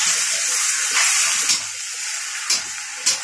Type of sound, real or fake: real